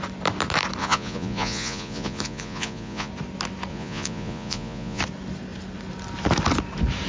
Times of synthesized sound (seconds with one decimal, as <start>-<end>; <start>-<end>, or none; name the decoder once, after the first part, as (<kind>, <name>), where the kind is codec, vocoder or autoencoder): 0.8-3.1 (vocoder, Vocos); 3.7-5.0